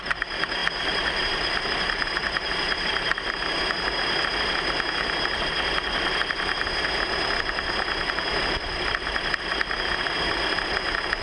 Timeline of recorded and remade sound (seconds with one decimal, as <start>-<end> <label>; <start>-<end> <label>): 0.0-0.6 recorded; 0.6-3.3 remade; 3.3-11.2 recorded